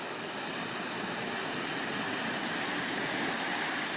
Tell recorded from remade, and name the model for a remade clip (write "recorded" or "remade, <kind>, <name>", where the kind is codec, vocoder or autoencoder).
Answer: recorded